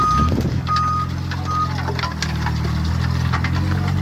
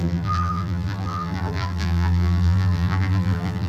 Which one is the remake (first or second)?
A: second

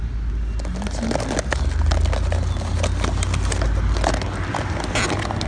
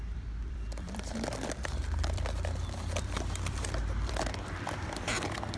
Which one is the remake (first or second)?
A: second